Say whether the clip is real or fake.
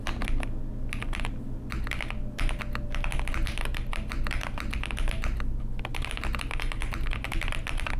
real